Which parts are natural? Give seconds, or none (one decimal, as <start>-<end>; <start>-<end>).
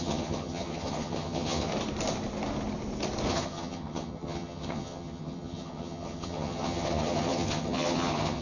1.7-3.3